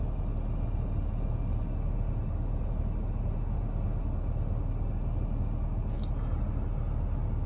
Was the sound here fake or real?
real